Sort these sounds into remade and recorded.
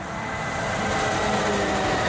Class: recorded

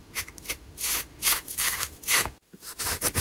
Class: remade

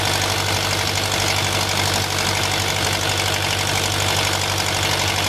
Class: recorded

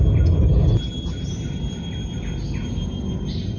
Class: recorded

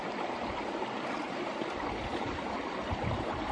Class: recorded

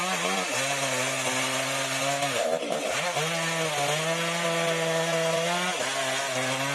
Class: recorded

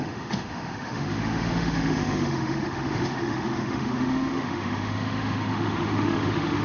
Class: remade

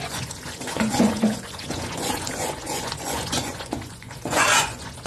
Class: remade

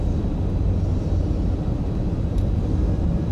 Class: recorded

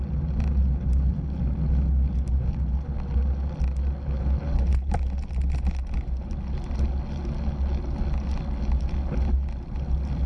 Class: recorded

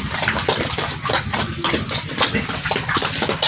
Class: remade